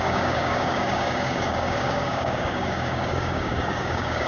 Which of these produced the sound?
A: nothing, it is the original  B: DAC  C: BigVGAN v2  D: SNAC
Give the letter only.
B